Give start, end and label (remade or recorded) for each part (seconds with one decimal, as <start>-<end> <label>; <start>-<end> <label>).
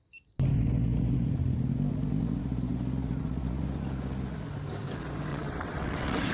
0.0-5.3 recorded; 5.3-6.3 remade